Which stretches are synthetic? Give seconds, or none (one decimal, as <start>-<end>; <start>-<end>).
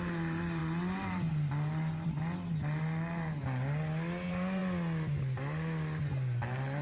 none